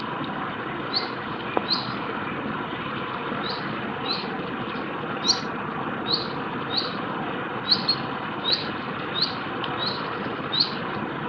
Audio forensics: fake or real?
fake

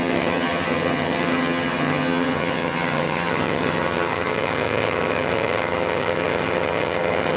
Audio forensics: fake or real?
fake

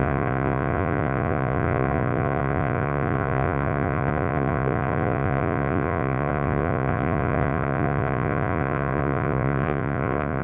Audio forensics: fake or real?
fake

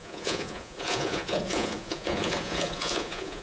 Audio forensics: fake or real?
fake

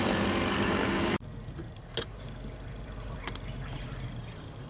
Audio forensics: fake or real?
fake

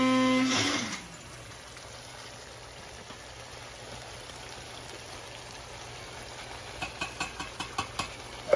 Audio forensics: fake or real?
real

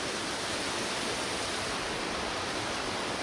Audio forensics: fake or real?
real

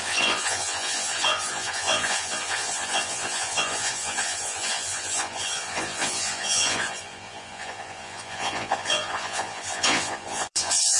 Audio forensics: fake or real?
fake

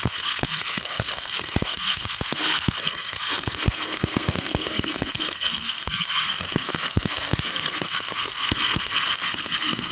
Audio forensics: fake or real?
fake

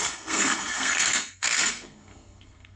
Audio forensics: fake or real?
fake